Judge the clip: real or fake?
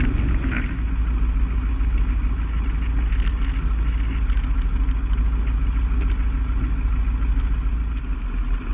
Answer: real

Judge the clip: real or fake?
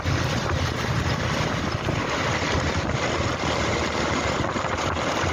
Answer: real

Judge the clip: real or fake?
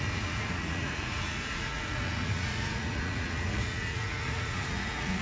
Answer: fake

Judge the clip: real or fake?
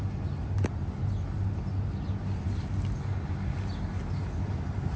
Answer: real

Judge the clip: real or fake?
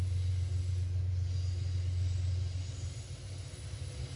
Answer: real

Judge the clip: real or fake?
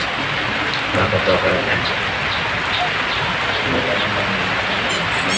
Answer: real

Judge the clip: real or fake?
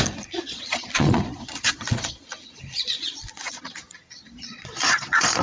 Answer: fake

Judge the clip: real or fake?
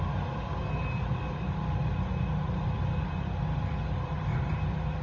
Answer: real